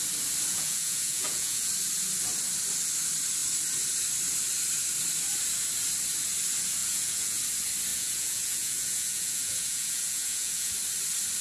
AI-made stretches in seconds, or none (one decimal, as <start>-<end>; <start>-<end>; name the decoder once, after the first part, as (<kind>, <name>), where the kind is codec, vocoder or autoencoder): 0.5-1.7 (vocoder, Vocos); 6.8-7.4; 7.9-10.7